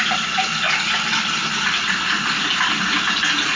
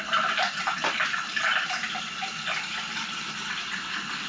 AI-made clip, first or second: second